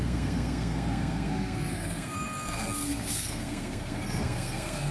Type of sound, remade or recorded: remade